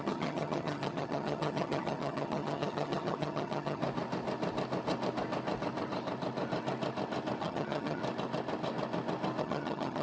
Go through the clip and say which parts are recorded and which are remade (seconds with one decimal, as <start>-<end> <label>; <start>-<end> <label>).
0.0-3.8 remade; 3.8-7.4 recorded; 7.4-8.0 remade; 8.0-9.4 recorded; 9.4-10.0 remade